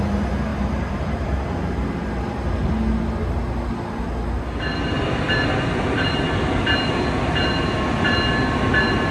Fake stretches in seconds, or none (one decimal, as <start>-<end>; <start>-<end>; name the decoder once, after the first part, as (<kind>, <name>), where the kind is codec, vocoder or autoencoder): 0.5-1.4 (vocoder, BigVGAN v2)